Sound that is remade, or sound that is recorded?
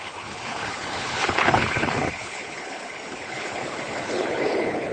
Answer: remade